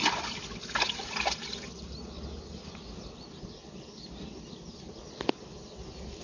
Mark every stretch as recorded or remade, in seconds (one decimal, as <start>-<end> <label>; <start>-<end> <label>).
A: 0.0-6.2 recorded